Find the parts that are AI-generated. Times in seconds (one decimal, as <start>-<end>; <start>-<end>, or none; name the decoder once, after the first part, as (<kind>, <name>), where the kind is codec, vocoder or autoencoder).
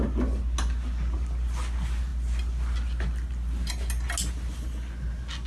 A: none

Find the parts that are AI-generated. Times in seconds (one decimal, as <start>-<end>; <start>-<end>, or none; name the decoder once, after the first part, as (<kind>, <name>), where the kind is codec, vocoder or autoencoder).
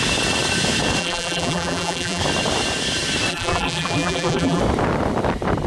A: 1.0-2.2 (vocoder, BigVGAN v2); 3.3-4.6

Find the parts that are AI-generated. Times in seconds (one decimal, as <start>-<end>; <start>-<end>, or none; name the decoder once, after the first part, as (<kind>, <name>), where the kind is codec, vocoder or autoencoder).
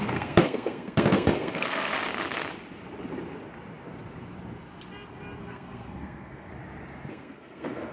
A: 0.0-1.9 (codec, SNAC); 5.4-6.5; 7.1-7.9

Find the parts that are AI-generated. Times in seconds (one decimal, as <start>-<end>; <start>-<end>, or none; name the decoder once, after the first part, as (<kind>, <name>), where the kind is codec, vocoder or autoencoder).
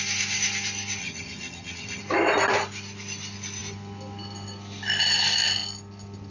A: 1.0-2.0 (vocoder, HiFi-GAN)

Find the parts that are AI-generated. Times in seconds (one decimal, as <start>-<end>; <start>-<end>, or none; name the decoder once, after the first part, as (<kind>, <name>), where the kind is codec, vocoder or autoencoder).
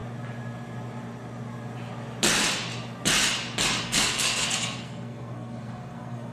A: 3.8-6.3 (codec, SNAC)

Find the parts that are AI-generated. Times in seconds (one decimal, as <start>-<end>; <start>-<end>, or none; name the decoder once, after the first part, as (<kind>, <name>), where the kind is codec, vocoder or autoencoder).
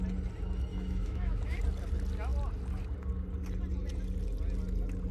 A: 0.7-1.6 (autoencoder, DAC-VAE)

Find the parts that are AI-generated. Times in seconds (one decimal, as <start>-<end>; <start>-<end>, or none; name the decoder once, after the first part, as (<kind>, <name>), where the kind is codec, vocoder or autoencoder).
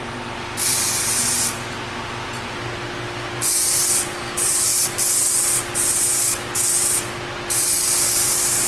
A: none